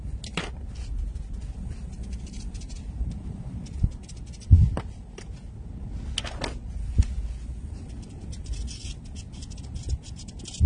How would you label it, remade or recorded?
recorded